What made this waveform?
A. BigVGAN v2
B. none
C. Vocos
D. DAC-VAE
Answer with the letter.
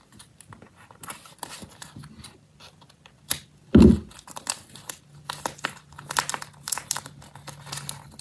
B